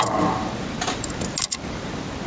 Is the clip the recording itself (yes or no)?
yes